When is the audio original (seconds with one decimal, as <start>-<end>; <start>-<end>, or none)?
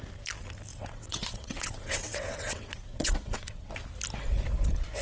0.0-0.7; 3.7-5.0